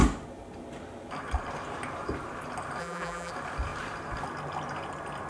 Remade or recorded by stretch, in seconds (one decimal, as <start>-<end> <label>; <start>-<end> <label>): 0.0-2.8 recorded; 2.8-3.3 remade; 3.3-5.3 recorded